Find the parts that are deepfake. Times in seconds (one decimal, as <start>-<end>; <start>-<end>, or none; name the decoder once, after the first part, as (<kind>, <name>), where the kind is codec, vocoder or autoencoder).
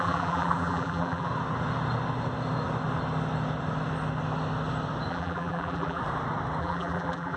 0.0-1.3 (vocoder, BigVGAN v2); 5.1-6.0; 6.6-7.4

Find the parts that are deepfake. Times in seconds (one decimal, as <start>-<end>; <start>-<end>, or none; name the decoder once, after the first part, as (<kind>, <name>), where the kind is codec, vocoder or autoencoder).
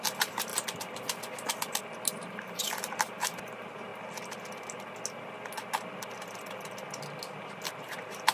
0.0-0.5 (vocoder, BigVGAN v2); 2.1-3.9; 7.7-8.3